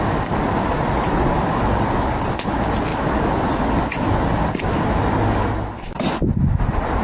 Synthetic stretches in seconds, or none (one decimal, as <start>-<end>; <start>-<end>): none